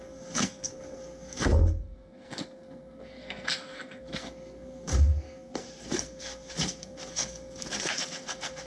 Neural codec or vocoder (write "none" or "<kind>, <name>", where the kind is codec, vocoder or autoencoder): codec, SNAC